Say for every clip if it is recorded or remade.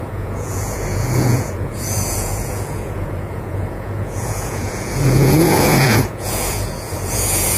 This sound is remade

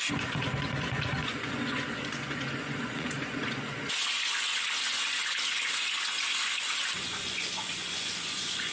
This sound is remade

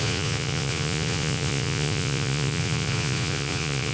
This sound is remade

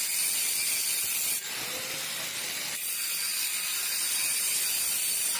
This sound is recorded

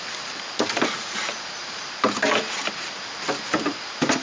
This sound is recorded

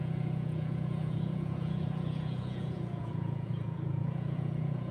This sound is remade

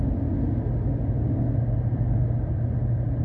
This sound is recorded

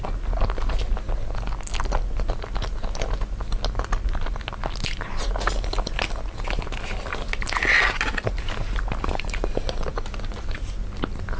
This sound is recorded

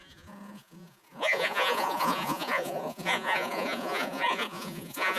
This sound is remade